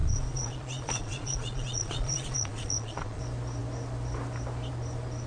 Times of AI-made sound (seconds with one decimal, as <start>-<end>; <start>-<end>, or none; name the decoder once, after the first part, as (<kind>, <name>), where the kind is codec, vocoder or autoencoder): 0.0-3.2 (vocoder, Vocos)